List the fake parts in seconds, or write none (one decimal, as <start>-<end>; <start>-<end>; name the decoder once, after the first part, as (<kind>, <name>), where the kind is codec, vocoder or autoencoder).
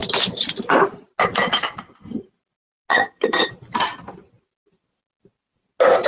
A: 2.9-3.5 (vocoder, HiFi-GAN)